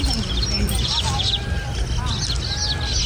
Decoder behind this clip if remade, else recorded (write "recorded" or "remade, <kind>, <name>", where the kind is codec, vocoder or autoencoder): recorded